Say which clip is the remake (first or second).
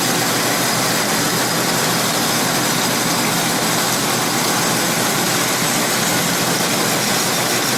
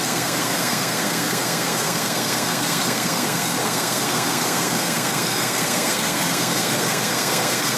second